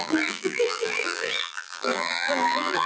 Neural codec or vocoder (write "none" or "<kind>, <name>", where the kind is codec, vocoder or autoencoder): vocoder, BigVGAN v2